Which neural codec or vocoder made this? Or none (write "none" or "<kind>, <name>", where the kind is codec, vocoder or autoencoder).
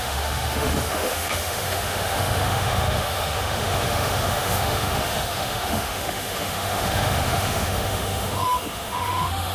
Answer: autoencoder, DAC-VAE